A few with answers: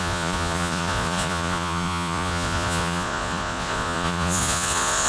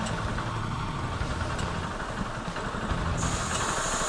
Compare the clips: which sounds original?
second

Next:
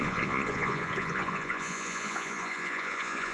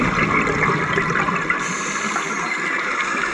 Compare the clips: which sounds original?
second